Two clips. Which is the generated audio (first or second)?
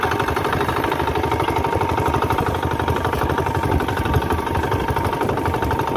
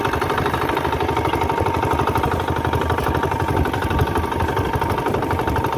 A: first